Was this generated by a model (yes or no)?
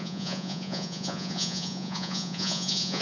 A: yes